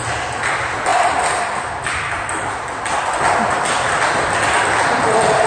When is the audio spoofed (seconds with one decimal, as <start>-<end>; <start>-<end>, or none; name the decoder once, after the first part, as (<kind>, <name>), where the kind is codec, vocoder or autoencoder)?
none